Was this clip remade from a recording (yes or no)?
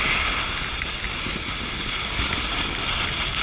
no